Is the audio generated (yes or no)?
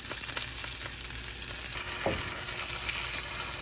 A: no